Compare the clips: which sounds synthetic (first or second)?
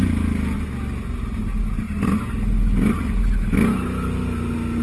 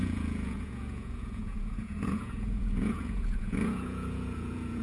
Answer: second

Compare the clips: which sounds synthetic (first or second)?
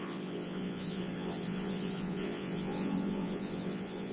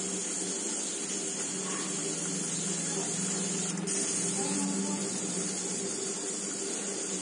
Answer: first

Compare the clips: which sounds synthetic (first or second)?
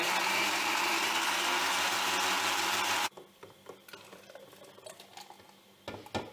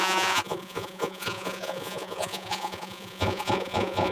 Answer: second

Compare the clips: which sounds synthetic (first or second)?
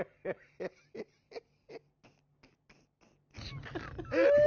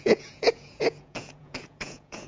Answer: second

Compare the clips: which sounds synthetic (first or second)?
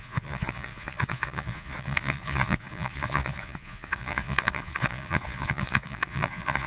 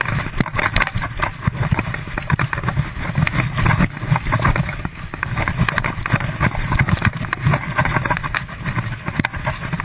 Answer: first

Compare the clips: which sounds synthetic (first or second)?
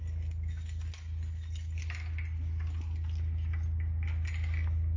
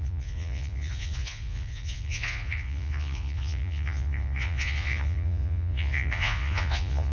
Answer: second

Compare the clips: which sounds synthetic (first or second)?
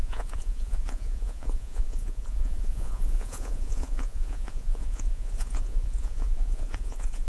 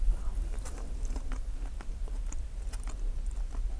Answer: first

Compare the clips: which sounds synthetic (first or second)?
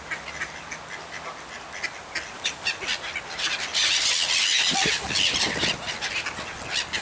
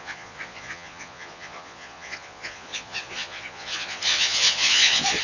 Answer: second